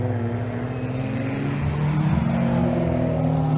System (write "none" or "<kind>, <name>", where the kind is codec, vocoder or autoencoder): none